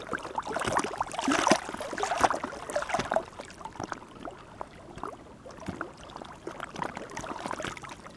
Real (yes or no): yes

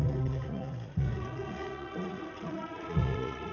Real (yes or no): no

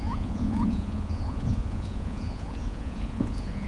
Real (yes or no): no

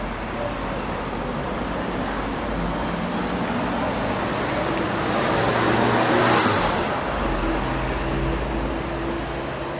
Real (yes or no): yes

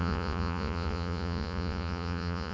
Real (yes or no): no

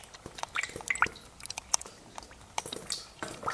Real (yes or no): yes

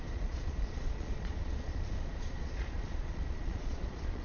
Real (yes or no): no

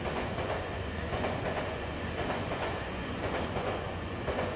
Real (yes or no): no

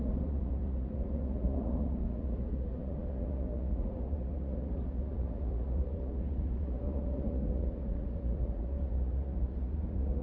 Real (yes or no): no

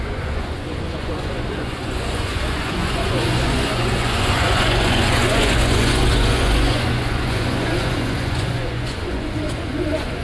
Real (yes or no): no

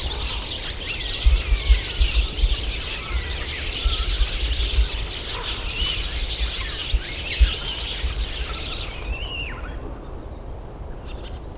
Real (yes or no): yes